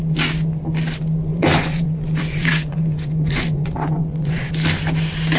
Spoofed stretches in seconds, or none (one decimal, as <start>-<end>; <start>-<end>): 1.3-4.5